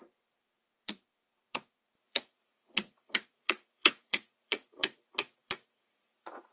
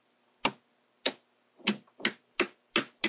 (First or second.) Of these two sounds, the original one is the second